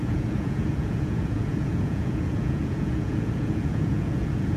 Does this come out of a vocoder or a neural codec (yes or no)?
yes